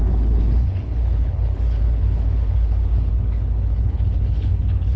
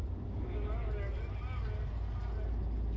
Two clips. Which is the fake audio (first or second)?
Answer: first